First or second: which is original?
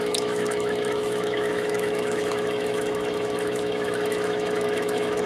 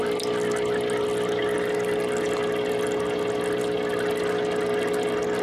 second